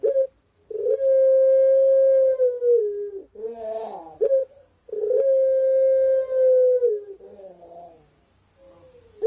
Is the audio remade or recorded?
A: recorded